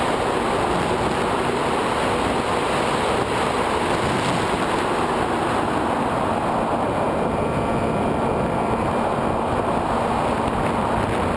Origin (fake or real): real